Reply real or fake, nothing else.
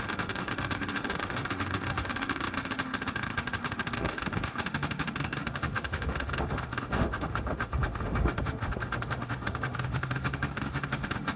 fake